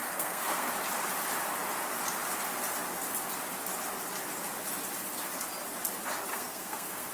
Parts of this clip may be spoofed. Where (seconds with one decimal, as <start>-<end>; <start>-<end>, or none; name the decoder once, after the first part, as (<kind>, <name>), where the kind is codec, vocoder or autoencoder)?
0.0-0.7 (codec, SNAC); 6.3-7.1